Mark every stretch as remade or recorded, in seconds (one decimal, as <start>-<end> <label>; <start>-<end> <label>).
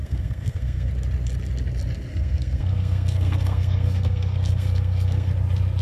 0.0-0.9 remade; 0.9-2.1 recorded; 2.1-5.3 remade; 5.3-5.8 recorded